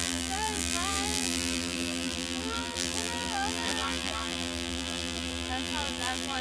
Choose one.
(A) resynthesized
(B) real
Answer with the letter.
A